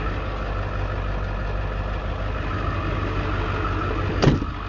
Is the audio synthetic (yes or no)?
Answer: no